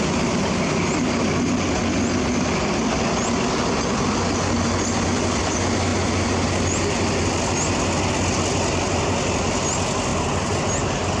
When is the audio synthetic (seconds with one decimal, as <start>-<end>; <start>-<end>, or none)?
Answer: 10.1-10.6

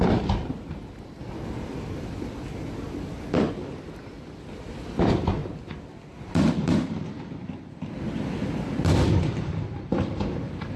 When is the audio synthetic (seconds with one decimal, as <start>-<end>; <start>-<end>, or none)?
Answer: 0.0-1.7; 3.0-10.8

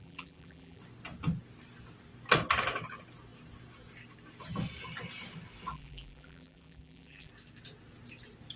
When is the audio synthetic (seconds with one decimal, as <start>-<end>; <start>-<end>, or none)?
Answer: 0.0-0.8; 5.7-7.3

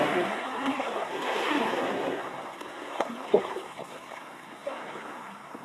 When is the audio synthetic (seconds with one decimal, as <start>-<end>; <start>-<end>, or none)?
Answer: 0.0-5.6

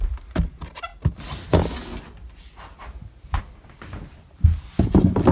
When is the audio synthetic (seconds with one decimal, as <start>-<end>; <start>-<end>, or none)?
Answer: none

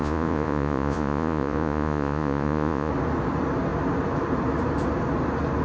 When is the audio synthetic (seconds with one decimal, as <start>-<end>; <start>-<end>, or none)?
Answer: 0.0-2.9